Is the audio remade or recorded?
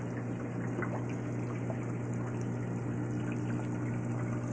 recorded